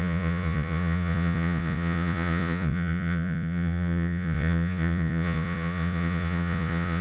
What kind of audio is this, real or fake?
fake